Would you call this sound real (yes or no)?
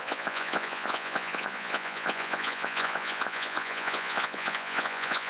no